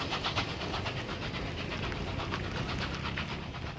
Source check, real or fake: real